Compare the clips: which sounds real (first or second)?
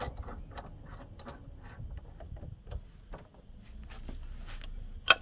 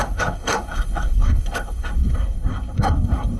first